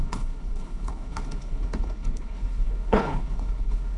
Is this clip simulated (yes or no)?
yes